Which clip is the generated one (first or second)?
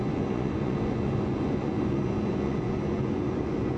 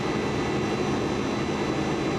first